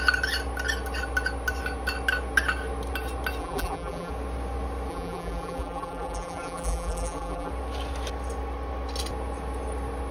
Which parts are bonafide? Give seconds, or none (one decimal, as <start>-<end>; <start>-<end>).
0.0-3.4; 4.1-4.9; 7.5-10.1